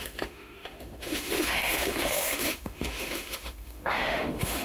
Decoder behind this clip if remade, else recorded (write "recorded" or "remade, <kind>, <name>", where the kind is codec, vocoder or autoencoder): remade, autoencoder, DAC-VAE